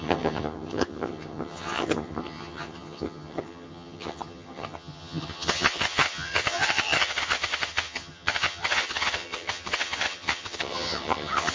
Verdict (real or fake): fake